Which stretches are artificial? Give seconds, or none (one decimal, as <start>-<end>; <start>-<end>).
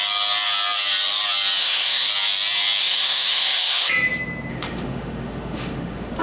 1.6-2.1; 2.8-3.9; 4.5-6.2